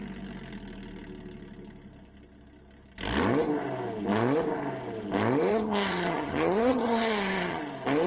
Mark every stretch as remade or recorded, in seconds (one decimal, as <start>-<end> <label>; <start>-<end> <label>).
0.0-5.5 recorded; 5.5-7.6 remade; 7.6-8.1 recorded